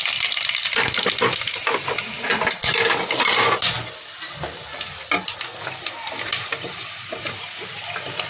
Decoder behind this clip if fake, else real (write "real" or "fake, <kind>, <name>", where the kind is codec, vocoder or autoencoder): real